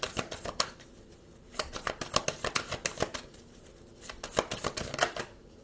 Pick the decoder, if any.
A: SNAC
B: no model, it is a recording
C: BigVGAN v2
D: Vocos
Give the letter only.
B